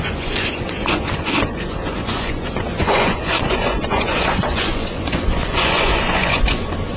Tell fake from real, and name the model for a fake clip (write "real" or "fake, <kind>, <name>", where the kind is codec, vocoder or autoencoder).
fake, vocoder, Vocos